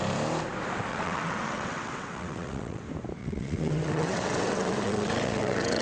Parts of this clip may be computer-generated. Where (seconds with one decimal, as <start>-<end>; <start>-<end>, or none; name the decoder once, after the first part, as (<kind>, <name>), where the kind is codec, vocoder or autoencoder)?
0.9-2.8 (vocoder, WaveNeXt); 3.2-5.8